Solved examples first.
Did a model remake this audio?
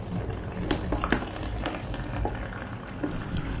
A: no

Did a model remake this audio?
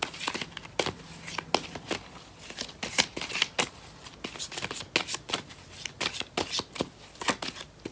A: no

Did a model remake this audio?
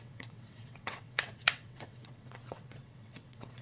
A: yes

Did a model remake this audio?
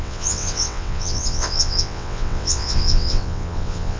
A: yes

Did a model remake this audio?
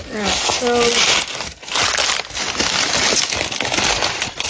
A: no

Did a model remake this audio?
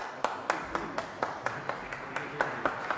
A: no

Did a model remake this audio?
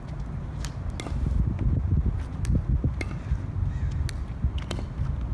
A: no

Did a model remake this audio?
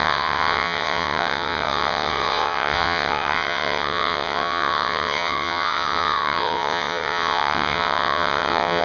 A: yes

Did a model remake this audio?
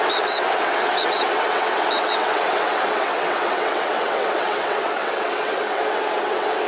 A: yes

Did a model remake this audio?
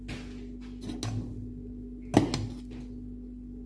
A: no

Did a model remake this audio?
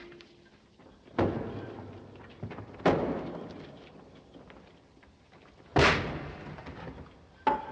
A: no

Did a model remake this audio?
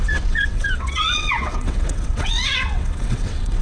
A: yes